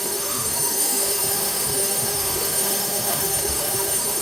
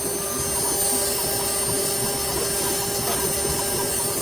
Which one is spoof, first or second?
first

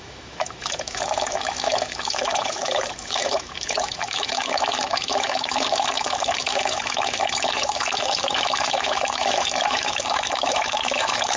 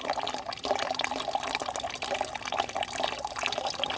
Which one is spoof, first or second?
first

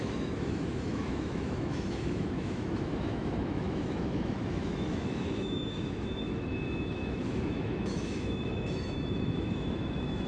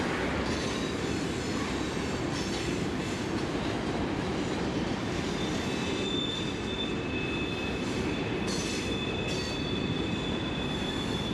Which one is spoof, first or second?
first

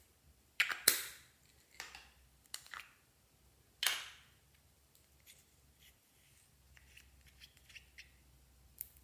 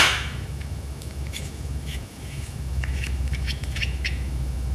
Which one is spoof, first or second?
second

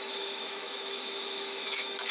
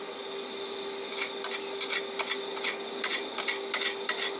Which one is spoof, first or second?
first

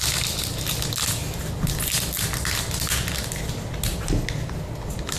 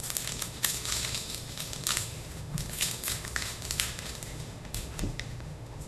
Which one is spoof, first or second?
second